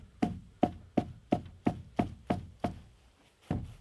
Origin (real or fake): real